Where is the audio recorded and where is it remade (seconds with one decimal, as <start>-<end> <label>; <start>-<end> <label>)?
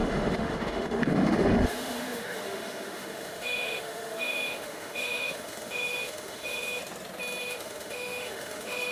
0.0-6.8 remade; 6.8-7.4 recorded; 7.4-8.9 remade